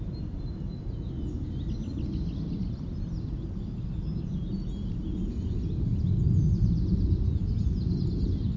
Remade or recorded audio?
recorded